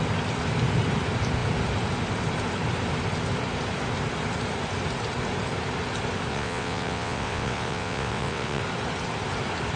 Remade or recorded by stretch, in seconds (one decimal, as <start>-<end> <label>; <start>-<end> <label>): 0.0-6.3 recorded; 6.3-8.6 remade; 8.6-9.8 recorded